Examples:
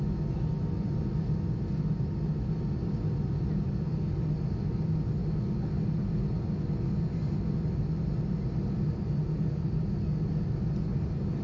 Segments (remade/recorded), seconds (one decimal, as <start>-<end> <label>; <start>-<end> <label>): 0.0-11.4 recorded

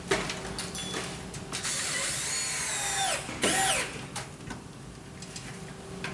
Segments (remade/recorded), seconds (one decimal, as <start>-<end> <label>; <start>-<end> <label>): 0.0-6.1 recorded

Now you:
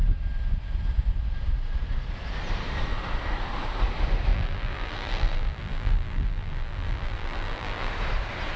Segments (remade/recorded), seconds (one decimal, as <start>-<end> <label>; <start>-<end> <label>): 0.0-4.3 recorded; 4.3-7.9 remade; 7.9-8.6 recorded

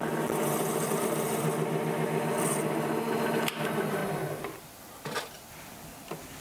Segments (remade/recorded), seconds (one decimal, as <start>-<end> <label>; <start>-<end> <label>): 0.0-6.4 recorded

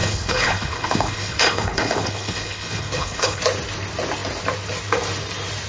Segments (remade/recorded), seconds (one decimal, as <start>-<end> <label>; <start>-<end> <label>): 0.0-3.4 remade; 3.4-5.7 recorded

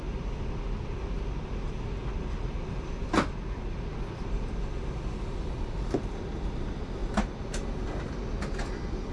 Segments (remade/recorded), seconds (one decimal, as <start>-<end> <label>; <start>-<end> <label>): 0.0-9.1 recorded

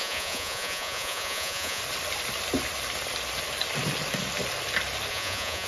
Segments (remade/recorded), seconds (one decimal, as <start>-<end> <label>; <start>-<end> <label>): 0.0-1.8 remade; 1.8-5.1 recorded; 5.1-5.7 remade

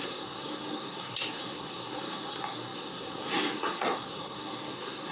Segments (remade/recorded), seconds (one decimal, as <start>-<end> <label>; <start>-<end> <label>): 0.0-5.1 remade